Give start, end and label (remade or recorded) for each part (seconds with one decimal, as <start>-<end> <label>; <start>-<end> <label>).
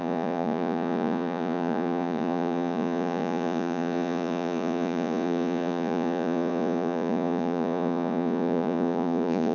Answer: 0.0-9.5 remade